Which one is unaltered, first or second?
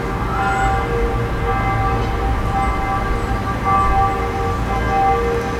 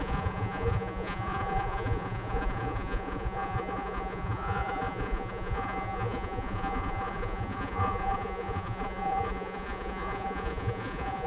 first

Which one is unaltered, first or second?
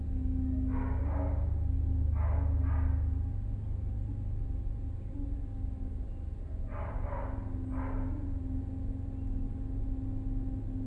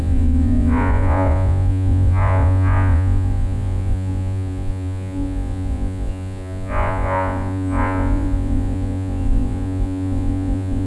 first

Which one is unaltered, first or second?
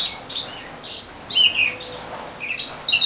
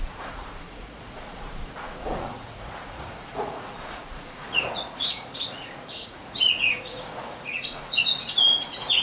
first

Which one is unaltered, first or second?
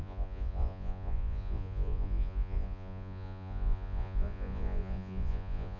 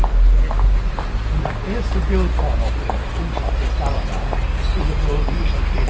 second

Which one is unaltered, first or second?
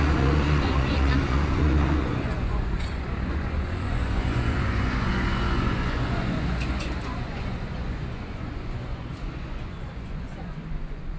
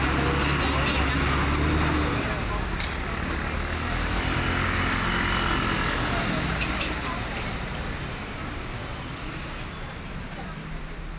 second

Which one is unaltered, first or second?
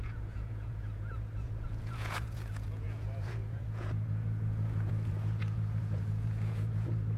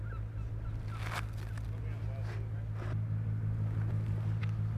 second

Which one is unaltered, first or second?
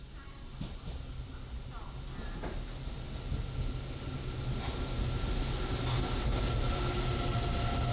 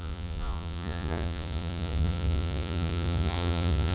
first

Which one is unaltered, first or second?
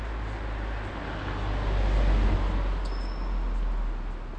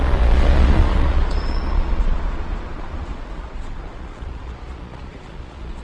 first